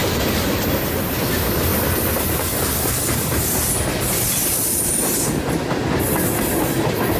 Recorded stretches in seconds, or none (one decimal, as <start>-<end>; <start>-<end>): 0.6-4.4; 5.3-7.2